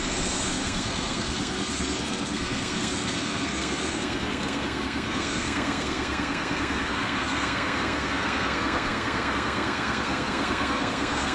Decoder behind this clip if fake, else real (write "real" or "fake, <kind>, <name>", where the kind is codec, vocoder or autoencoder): fake, codec, SNAC